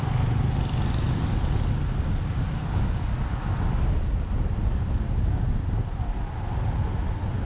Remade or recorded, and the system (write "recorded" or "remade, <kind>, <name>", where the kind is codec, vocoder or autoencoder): recorded